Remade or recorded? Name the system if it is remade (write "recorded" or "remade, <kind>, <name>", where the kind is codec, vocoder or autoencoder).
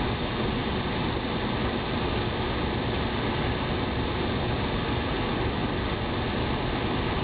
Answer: recorded